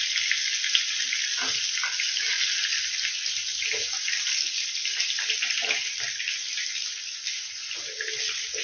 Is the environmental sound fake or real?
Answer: real